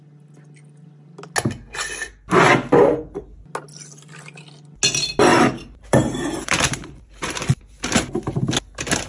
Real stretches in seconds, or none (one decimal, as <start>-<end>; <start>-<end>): 0.0-5.3; 7.6-9.1